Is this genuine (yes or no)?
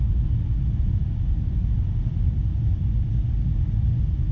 yes